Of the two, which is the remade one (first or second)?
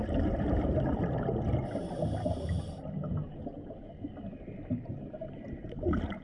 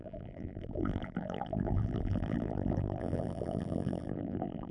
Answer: second